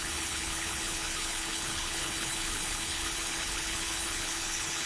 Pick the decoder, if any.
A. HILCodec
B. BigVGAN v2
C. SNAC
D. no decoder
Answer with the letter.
A